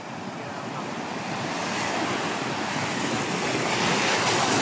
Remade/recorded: recorded